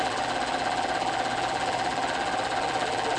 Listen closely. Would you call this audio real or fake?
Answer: fake